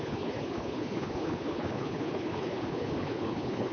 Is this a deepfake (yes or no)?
yes